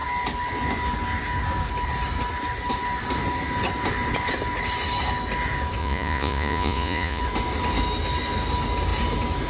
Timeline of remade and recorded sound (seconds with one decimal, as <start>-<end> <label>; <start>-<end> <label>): 0.0-5.8 recorded; 5.8-7.2 remade; 7.2-9.5 recorded